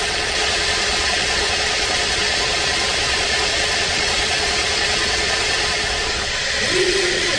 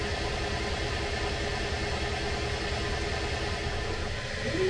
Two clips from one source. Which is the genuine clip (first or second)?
second